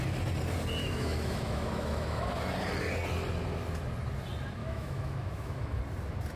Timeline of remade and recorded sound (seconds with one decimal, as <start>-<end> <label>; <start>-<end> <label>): 0.0-0.8 recorded; 0.8-2.3 remade; 2.3-4.6 recorded; 4.6-5.8 remade; 5.8-6.4 recorded